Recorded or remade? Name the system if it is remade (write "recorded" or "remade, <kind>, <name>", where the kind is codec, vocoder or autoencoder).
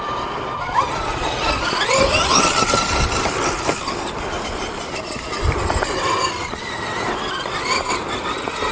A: remade, vocoder, BigVGAN v2